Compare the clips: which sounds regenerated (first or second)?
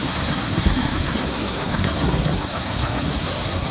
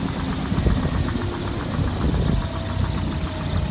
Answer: first